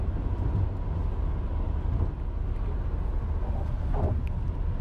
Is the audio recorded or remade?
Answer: recorded